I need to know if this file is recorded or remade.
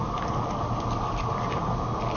recorded